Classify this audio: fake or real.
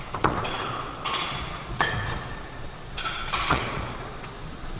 fake